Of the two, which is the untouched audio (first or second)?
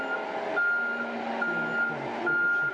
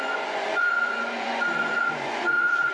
first